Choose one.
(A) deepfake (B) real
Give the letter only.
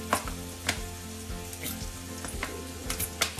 B